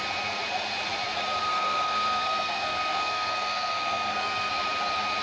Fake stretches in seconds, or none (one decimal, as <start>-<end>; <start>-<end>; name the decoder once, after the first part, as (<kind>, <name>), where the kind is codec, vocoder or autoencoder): 1.4-4.5 (codec, SNAC)